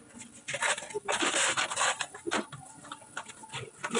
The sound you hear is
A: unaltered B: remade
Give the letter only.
A